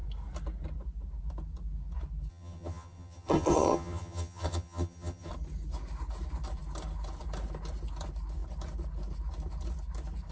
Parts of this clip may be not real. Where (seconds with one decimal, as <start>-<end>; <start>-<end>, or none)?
2.3-5.3